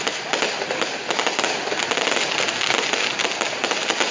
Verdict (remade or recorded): recorded